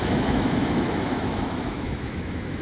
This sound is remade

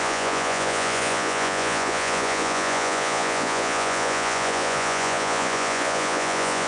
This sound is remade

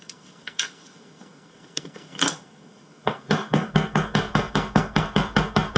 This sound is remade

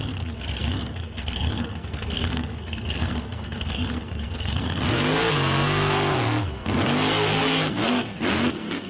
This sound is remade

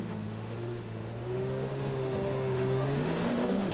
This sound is remade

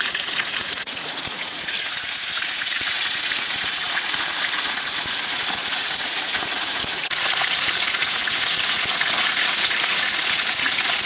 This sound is remade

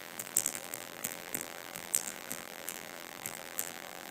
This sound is remade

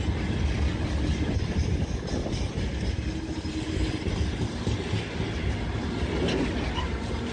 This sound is recorded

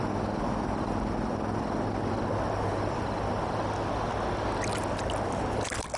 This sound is recorded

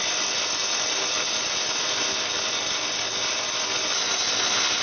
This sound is recorded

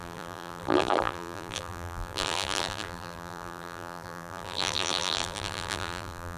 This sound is remade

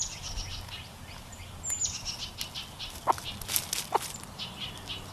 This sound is recorded